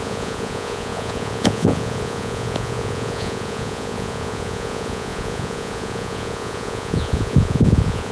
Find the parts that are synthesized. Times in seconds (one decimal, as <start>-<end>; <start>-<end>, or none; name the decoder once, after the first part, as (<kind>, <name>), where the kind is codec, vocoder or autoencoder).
0.0-8.1 (vocoder, Vocos)